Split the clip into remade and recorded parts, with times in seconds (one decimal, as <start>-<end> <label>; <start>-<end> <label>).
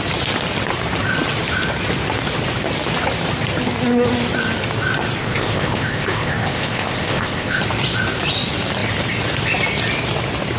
0.0-5.2 recorded; 5.2-7.6 remade; 7.6-10.6 recorded